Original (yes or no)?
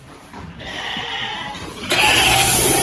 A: no